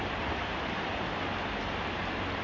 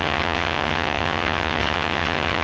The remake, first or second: second